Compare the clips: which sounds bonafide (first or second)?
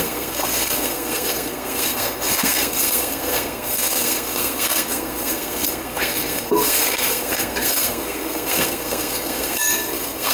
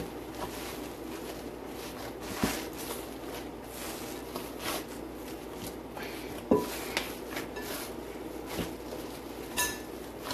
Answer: second